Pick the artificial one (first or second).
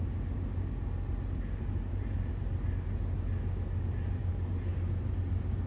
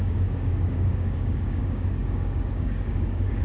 second